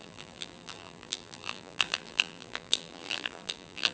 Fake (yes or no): yes